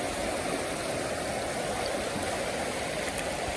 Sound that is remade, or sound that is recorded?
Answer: recorded